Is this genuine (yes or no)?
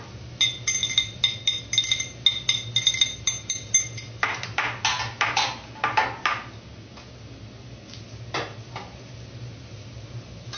yes